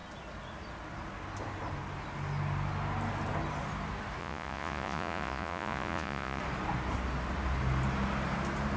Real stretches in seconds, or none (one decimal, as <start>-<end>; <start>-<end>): 0.0-4.2; 6.4-8.8